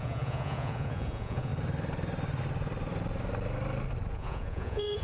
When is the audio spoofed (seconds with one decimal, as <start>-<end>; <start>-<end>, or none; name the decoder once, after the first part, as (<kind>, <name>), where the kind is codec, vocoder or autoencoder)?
0.0-1.5 (vocoder, Vocos); 4.1-5.0